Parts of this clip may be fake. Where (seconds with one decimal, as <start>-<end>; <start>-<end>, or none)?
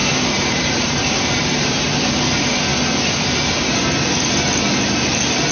0.0-1.2